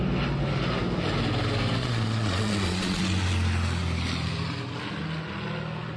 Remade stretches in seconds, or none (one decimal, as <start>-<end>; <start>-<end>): 1.8-3.0